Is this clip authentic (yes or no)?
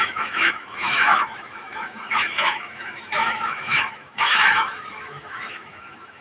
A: no